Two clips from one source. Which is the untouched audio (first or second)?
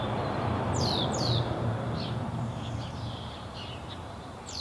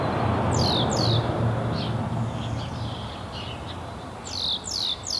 second